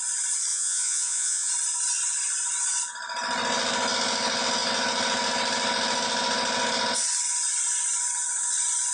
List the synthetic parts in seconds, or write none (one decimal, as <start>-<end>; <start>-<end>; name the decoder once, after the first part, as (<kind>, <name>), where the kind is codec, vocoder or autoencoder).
0.5-1.5 (vocoder, Vocos)